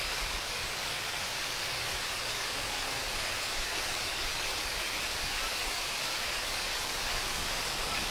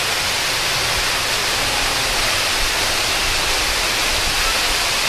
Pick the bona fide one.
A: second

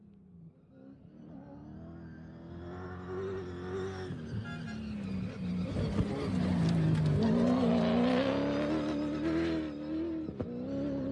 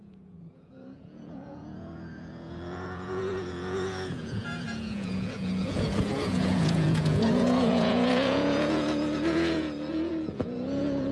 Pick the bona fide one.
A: first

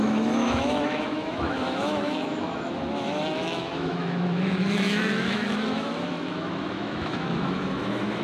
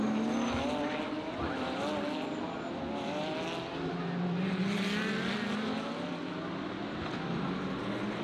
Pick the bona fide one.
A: second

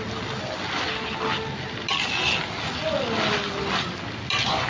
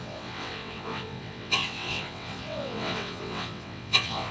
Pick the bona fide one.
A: first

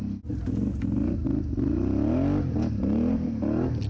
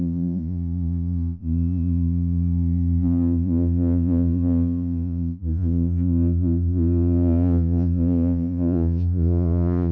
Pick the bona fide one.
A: first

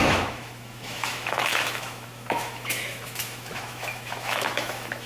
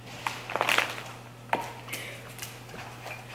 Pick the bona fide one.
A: second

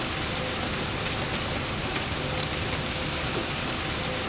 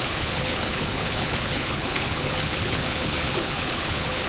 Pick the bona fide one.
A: first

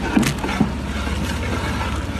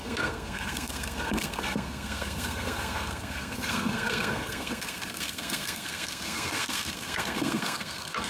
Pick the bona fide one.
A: first